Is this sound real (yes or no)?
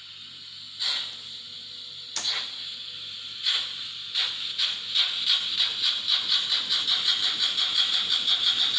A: yes